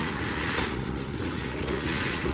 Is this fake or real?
fake